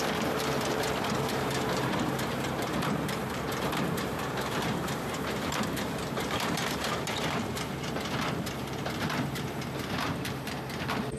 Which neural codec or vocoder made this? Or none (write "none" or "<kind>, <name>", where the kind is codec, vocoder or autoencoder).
vocoder, BigVGAN v2